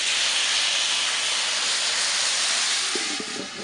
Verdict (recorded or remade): recorded